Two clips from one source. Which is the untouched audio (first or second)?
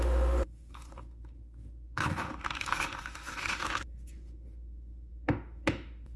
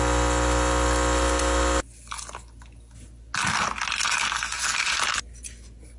second